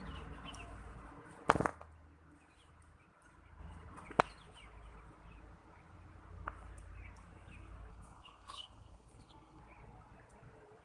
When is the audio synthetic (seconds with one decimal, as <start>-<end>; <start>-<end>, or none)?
7.9-9.6